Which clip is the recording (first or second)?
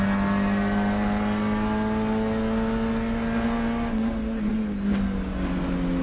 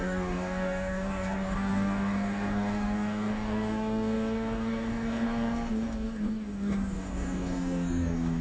first